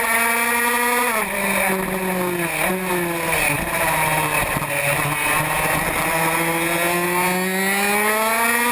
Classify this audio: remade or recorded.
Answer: recorded